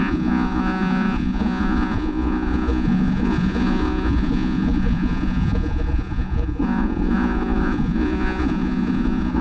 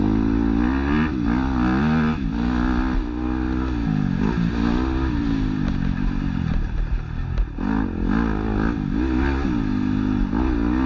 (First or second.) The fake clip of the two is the first